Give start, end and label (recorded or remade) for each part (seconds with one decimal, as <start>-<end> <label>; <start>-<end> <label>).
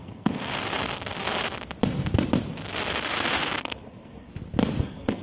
0.0-0.5 remade; 0.5-3.6 recorded; 3.6-4.3 remade; 4.3-4.8 recorded; 4.8-5.2 remade